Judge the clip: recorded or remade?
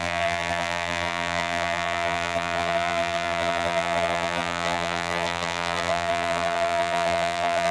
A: remade